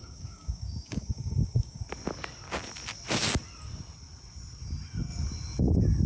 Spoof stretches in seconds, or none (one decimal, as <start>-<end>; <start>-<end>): 0.0-1.8